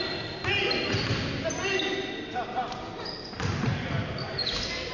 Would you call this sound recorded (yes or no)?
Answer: yes